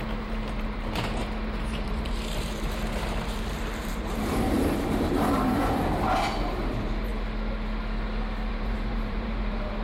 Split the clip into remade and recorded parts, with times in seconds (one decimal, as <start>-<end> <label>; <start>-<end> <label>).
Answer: 0.0-1.2 remade; 1.2-1.7 recorded; 1.7-7.1 remade; 7.1-8.5 recorded; 8.5-9.8 remade